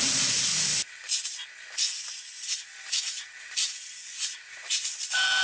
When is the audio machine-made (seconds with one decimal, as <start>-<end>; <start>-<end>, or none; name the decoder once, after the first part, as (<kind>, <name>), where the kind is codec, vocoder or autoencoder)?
0.0-0.5 (vocoder, BigVGAN v2); 2.8-5.4